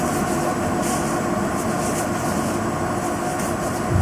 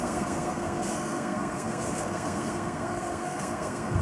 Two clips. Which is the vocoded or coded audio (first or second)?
second